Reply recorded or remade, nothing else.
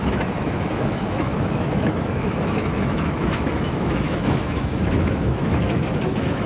remade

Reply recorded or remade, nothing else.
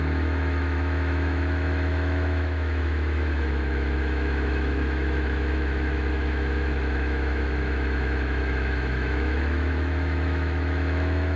remade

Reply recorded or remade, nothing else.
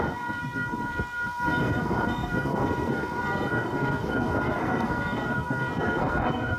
remade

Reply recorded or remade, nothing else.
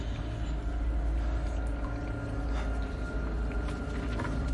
recorded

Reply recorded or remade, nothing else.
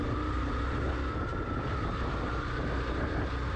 recorded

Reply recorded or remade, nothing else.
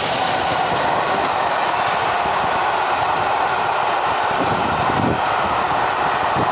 recorded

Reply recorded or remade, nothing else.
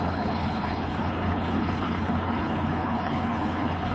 remade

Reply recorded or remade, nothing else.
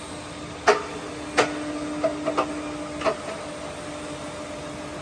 recorded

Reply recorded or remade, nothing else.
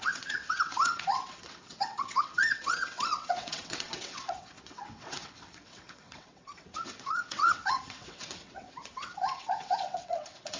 remade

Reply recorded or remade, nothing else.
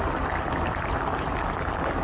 recorded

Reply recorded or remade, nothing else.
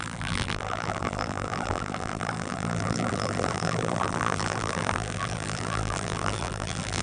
remade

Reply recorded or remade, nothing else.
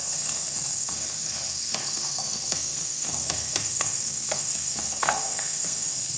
remade